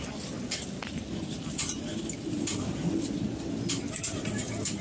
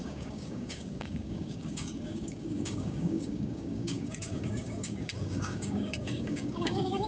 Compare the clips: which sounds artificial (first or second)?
second